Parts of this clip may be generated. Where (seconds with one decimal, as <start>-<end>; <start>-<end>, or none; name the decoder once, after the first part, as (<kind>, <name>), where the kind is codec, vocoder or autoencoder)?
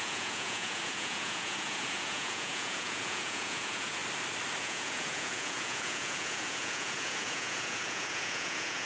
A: 0.0-4.0 (vocoder, Vocos); 4.6-8.9